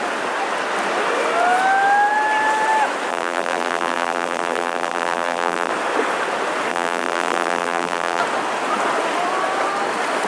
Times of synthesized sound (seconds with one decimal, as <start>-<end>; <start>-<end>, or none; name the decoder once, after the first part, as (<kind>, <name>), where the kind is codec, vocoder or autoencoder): 3.1-5.7 (vocoder, BigVGAN v2); 6.7-8.2